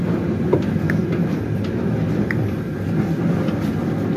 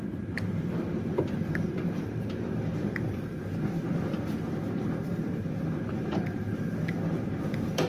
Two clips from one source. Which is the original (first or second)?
first